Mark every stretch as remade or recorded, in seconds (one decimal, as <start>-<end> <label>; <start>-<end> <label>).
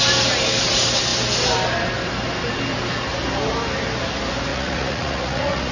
0.0-4.5 recorded; 4.5-5.7 remade